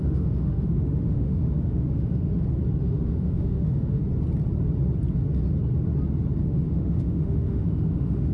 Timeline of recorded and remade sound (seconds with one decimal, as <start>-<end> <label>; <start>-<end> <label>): 0.0-2.3 remade; 2.3-2.8 recorded; 2.8-4.0 remade; 4.0-6.4 recorded; 6.4-8.3 remade